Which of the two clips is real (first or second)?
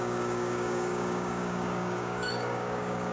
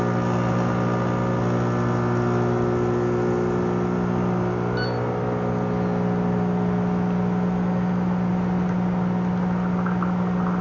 second